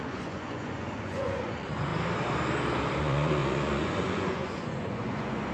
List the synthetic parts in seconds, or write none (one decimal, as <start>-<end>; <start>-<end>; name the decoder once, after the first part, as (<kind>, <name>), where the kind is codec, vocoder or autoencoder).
0.0-1.9 (vocoder, Vocos); 3.0-5.5